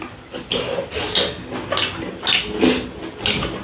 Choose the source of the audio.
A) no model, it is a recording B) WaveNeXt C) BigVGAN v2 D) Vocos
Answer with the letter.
A